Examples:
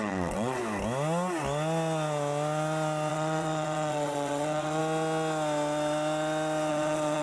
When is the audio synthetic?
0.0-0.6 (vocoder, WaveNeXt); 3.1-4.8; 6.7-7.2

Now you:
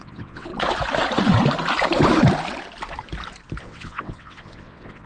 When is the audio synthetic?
0.0-0.5 (vocoder, WaveNeXt); 3.6-5.1

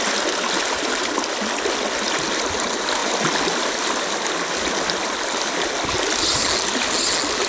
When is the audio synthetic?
none

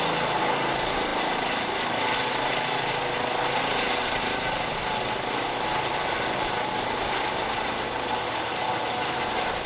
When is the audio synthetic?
none

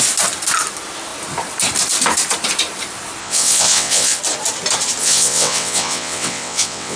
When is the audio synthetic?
3.2-4.2 (vocoder, WaveNeXt); 5.0-7.0

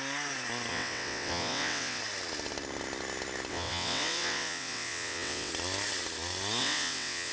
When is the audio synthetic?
0.7-2.0 (vocoder, WaveNeXt); 3.5-5.5; 6.6-7.3

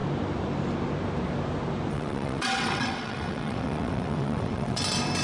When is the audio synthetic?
1.9-4.8 (vocoder, WaveNeXt)

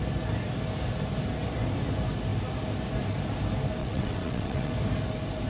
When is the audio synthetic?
3.8-4.7 (vocoder, WaveNeXt)